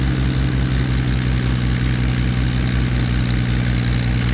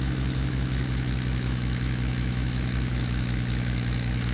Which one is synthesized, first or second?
second